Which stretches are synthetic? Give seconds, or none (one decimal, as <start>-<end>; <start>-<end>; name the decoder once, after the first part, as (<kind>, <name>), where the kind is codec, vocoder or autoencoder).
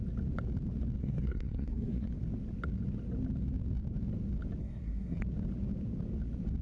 1.0-2.1 (codec, SNAC); 4.6-5.2